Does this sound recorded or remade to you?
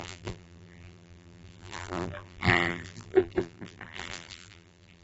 remade